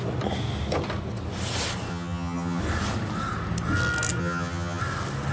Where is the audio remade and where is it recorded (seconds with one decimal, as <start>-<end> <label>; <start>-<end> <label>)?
0.0-1.9 recorded; 1.9-2.6 remade; 2.6-4.2 recorded; 4.2-4.8 remade; 4.8-5.3 recorded